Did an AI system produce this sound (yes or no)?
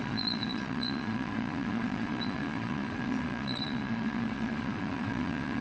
yes